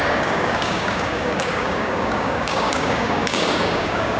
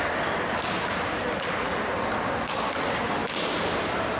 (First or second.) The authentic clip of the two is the second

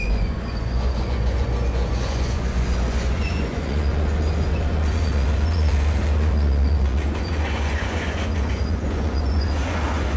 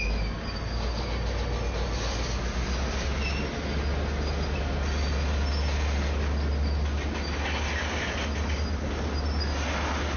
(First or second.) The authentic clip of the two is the second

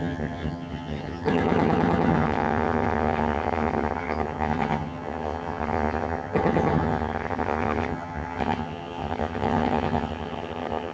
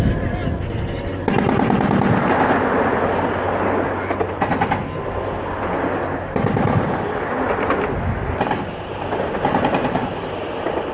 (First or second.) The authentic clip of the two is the second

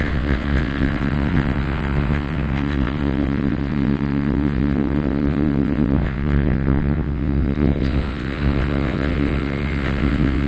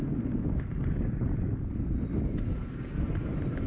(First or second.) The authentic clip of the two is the second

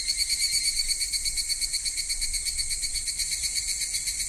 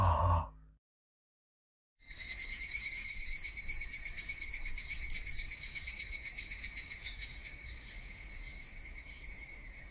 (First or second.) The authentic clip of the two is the first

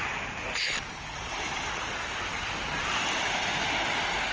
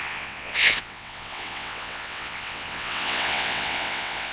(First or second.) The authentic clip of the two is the first